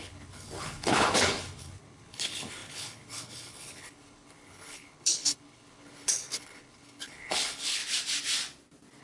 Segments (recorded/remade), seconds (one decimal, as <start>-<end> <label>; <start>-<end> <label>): 0.0-7.8 remade; 7.8-9.0 recorded